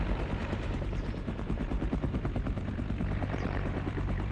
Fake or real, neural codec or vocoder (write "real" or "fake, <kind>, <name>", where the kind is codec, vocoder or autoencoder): fake, vocoder, BigVGAN v2